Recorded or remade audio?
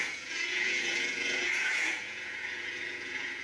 remade